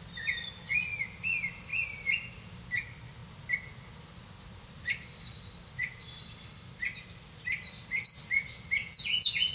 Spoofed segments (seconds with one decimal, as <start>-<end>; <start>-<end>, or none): 8.8-9.5